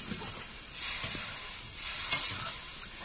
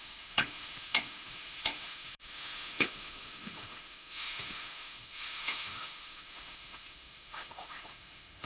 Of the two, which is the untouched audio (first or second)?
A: first